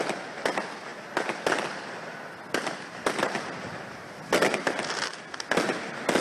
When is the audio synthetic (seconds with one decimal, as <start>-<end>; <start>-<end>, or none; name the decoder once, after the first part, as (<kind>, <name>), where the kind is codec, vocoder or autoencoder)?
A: none